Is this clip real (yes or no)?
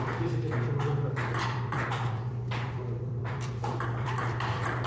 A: no